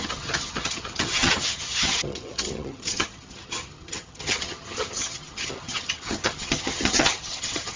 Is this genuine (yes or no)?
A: no